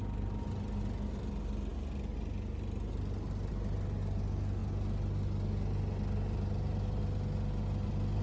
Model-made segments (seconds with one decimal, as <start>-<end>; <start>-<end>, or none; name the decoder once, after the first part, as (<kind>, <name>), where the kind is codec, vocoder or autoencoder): none